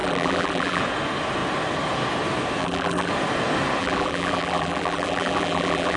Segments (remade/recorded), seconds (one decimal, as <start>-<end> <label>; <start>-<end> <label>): 0.0-0.8 remade; 0.8-2.6 recorded; 2.6-3.1 remade; 3.1-3.8 recorded; 3.8-6.0 remade